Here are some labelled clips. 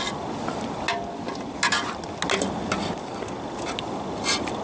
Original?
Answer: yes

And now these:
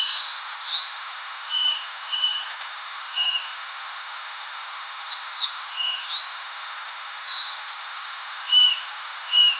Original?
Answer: no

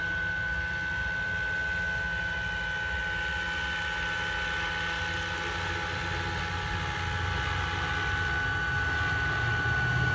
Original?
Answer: yes